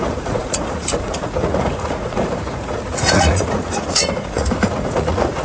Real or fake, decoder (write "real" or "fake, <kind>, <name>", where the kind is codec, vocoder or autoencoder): fake, vocoder, Vocos